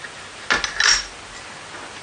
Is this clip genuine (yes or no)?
yes